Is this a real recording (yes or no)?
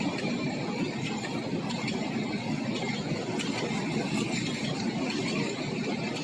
yes